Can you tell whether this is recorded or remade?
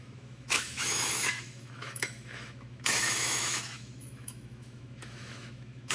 remade